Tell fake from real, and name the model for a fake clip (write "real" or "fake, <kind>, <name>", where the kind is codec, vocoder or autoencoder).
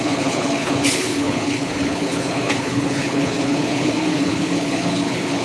fake, codec, HILCodec